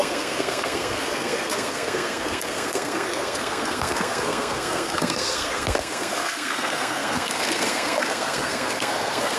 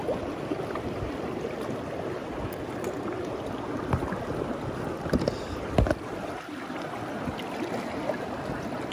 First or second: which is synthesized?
first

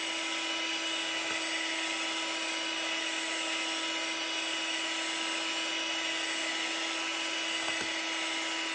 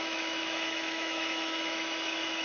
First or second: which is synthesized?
second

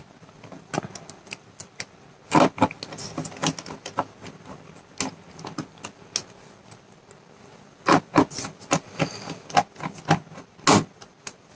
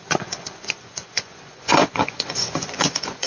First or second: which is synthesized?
second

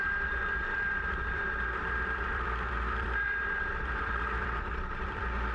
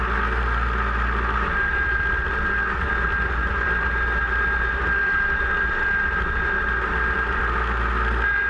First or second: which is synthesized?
first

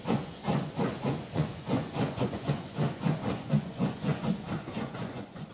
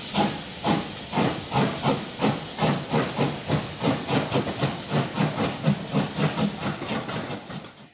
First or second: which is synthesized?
first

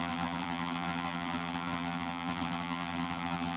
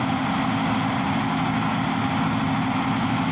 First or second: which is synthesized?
first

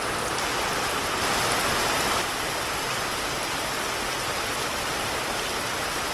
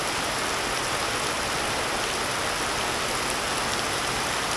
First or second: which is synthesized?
first